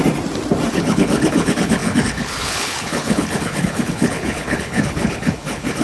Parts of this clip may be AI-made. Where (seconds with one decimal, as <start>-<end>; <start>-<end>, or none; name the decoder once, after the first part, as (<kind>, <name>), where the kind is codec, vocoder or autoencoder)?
0.7-5.8 (codec, HILCodec)